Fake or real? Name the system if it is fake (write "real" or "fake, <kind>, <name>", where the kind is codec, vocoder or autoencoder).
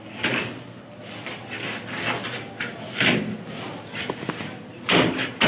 real